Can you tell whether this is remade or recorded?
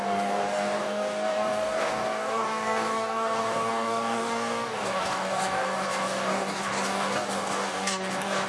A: remade